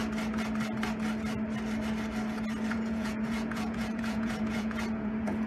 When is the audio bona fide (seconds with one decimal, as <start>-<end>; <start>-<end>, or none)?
0.0-2.7